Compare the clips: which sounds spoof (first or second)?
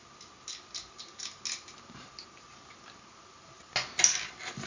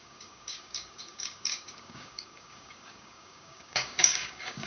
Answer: second